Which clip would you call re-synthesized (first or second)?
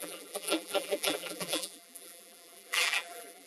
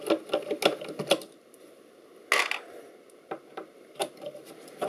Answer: first